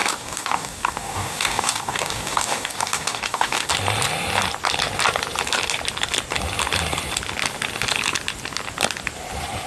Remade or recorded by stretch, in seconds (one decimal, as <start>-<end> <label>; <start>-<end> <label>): 0.0-3.7 remade; 3.7-9.7 recorded